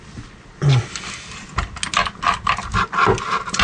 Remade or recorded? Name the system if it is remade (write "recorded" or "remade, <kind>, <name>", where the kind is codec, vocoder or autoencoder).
recorded